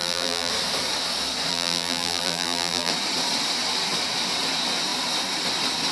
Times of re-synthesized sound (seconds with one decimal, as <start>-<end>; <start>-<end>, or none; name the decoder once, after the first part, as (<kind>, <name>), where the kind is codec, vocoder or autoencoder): 0.0-0.5 (vocoder, BigVGAN v2); 1.5-2.9